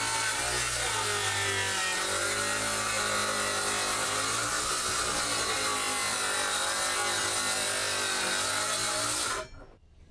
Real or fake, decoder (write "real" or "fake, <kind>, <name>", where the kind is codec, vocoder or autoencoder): real